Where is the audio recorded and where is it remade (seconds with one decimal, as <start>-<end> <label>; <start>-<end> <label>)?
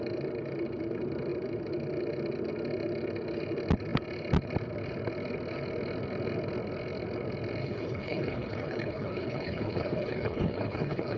0.0-7.6 recorded; 7.6-11.2 remade